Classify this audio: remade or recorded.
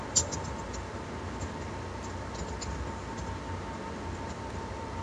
recorded